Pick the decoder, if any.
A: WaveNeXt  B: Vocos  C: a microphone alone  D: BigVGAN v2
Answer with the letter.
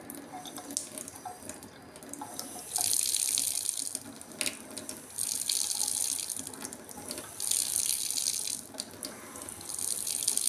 C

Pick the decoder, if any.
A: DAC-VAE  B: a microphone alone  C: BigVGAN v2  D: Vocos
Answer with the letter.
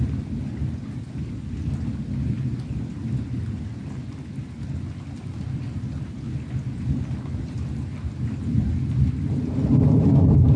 B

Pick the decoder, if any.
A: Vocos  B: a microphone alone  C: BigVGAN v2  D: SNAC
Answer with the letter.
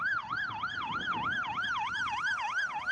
B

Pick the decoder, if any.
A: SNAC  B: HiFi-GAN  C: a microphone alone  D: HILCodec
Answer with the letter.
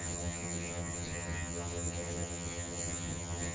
B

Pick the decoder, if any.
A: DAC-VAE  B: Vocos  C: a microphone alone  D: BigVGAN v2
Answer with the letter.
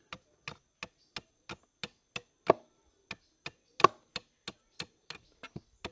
C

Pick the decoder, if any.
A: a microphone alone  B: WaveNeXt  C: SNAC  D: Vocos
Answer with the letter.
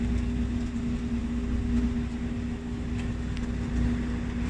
A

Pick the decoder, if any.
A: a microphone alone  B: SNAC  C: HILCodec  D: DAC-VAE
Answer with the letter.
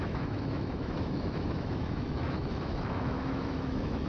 D